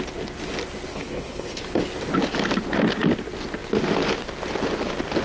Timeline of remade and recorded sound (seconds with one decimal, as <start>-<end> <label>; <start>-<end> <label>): 0.0-0.9 recorded; 0.9-1.6 remade; 1.6-5.2 recorded

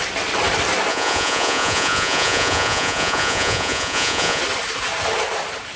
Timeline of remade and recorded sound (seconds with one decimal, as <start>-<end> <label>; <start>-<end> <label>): 0.0-0.9 recorded; 0.9-4.4 remade; 4.4-5.8 recorded

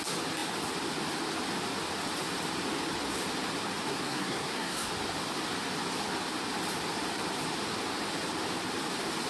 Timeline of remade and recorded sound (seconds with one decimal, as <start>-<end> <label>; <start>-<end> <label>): 0.0-3.9 recorded; 3.9-4.9 remade; 4.9-9.3 recorded

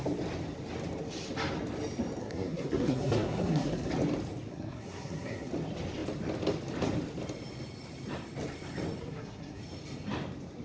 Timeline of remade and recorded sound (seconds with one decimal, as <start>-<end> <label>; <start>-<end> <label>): 0.0-2.2 recorded; 2.2-3.9 remade; 3.9-4.5 recorded; 4.5-5.5 remade; 5.5-9.0 recorded; 9.0-9.6 remade; 9.6-10.6 recorded

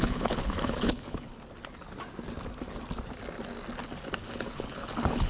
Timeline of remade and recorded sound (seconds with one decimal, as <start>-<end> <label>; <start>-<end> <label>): 0.0-1.3 remade; 1.3-4.5 recorded; 4.5-5.3 remade

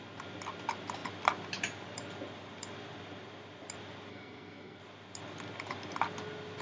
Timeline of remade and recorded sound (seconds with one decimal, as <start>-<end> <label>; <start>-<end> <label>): 0.0-4.1 recorded; 4.1-4.8 remade; 4.8-6.6 recorded